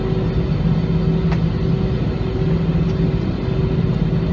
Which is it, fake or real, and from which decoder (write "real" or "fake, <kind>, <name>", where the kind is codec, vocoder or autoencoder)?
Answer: real